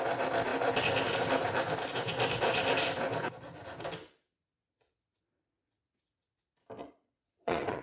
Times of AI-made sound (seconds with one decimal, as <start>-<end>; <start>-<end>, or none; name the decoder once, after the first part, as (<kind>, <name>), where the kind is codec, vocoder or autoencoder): 6.8-7.8 (vocoder, Vocos)